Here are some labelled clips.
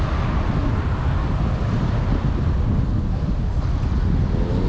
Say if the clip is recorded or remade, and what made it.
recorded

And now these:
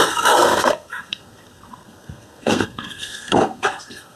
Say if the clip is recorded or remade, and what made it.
remade, codec, SNAC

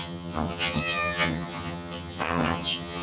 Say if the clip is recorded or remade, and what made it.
remade, vocoder, HiFi-GAN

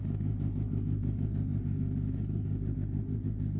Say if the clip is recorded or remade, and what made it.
remade, autoencoder, DAC-VAE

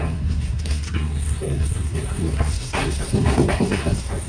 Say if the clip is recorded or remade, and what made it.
remade, codec, SNAC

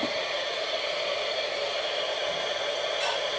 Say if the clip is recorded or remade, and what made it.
remade, vocoder, BigVGAN v2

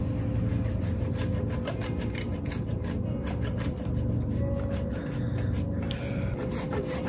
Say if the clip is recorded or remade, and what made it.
recorded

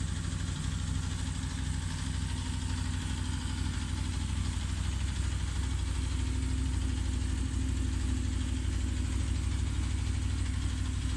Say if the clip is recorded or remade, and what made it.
recorded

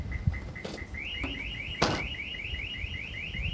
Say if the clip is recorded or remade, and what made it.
recorded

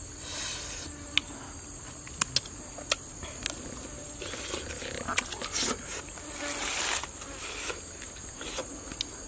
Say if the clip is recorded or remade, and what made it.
recorded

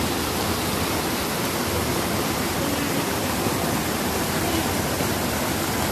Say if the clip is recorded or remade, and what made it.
recorded